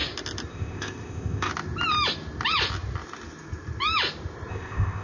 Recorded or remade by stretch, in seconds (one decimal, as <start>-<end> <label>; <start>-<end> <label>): 0.0-0.5 recorded; 0.5-1.5 remade; 1.5-4.5 recorded; 4.5-5.0 remade